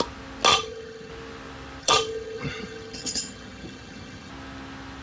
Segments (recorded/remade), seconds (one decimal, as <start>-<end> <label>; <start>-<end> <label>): 0.0-0.5 recorded; 0.5-1.1 remade; 1.1-1.8 recorded; 1.8-4.3 remade; 4.3-5.0 recorded